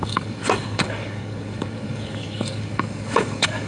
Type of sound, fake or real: fake